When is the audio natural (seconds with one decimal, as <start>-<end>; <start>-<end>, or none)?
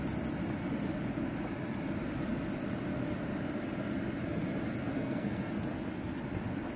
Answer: 0.0-4.8; 5.5-6.8